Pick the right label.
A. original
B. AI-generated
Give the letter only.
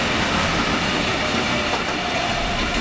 A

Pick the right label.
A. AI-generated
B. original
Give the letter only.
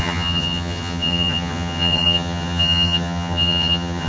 A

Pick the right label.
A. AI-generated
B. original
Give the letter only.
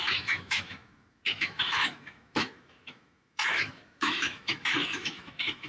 A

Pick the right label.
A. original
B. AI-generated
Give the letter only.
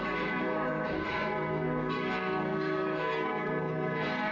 B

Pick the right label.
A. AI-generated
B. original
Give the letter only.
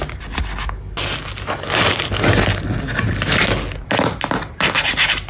B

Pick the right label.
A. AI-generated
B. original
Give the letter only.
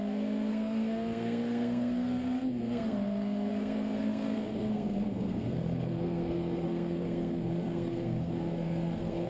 A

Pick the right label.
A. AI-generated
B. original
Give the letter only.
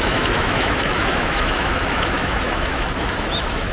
A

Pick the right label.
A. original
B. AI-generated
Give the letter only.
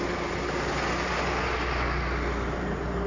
A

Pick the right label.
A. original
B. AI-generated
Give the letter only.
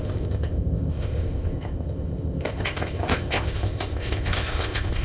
B